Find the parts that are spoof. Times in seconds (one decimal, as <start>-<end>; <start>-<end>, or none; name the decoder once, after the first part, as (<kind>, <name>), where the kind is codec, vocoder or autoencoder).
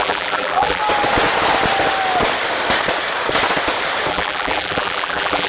0.0-0.8 (vocoder, BigVGAN v2); 4.1-5.5